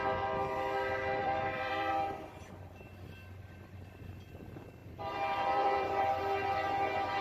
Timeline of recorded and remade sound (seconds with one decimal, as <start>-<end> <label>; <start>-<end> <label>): 0.0-1.2 recorded; 1.2-1.9 remade; 1.9-4.8 recorded; 4.8-6.2 remade; 6.2-7.2 recorded